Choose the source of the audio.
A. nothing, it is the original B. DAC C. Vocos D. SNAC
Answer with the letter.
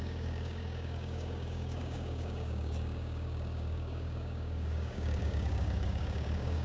B